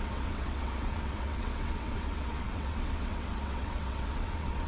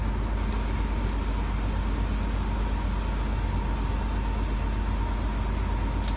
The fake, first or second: first